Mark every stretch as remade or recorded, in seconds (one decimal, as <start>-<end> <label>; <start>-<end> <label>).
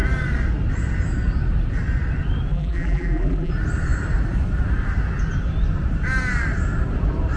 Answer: 0.0-2.5 recorded; 2.5-3.5 remade; 3.5-7.4 recorded